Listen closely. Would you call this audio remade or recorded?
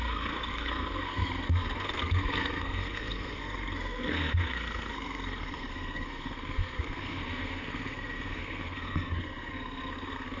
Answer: remade